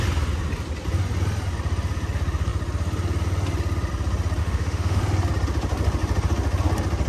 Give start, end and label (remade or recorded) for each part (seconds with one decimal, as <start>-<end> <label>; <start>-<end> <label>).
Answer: 0.0-4.4 recorded; 4.4-5.0 remade; 5.0-7.1 recorded